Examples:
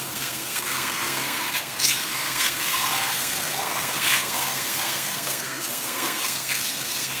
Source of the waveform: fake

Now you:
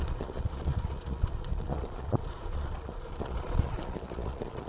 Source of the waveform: fake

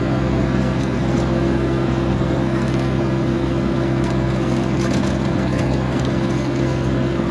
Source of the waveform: fake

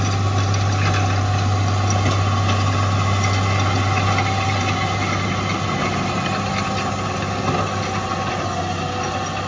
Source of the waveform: real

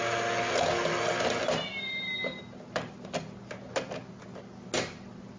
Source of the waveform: real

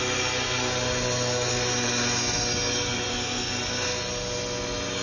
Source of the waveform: real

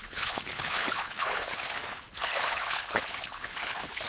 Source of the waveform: fake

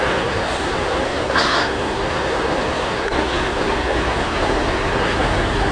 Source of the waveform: fake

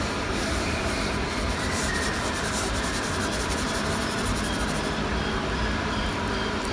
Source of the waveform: fake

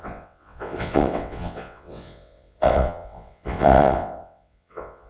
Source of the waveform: fake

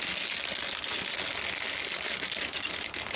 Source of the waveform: real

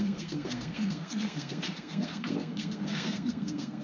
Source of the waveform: fake